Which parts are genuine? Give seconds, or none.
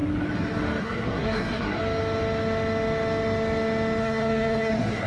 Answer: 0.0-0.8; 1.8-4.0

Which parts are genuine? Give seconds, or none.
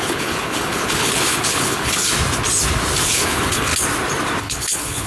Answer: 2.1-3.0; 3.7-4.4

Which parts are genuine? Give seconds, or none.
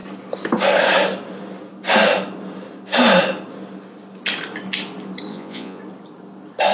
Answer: 0.0-5.3; 5.8-6.7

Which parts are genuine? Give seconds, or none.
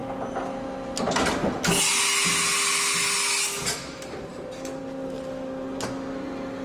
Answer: 0.0-6.6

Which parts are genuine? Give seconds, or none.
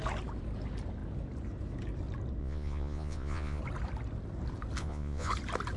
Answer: 0.0-2.4; 3.6-4.8; 5.3-5.8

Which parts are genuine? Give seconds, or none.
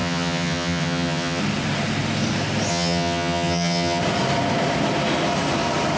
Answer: 1.4-2.7; 4.0-6.0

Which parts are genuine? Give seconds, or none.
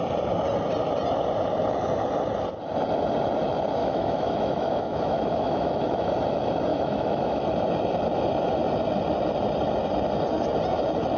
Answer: 0.0-3.8; 6.1-6.7; 7.4-11.2